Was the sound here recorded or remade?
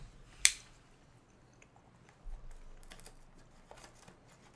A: recorded